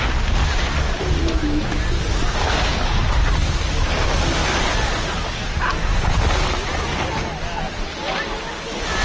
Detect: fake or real real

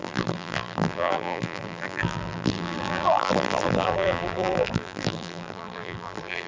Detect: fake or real fake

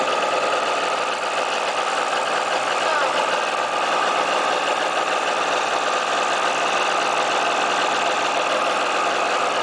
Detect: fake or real real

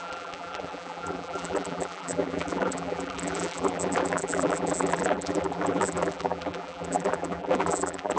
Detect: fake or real fake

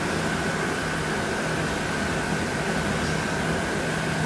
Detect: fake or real real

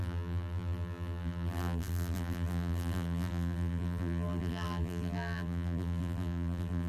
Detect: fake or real fake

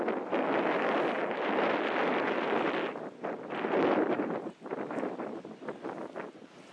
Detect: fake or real real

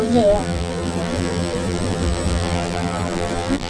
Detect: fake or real fake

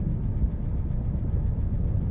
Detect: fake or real real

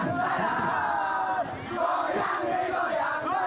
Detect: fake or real real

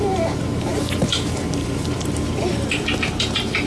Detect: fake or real fake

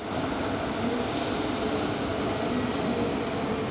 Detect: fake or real real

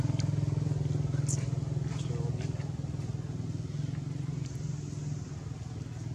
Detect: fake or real real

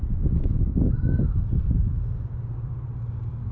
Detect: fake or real real